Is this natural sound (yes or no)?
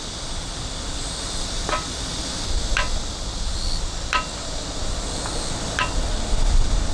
yes